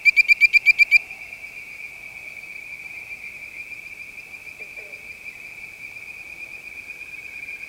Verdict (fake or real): real